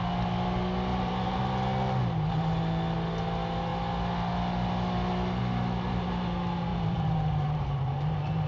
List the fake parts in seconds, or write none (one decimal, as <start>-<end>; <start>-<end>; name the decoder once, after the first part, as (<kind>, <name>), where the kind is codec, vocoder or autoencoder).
0.9-1.4 (vocoder, BigVGAN v2); 6.7-8.5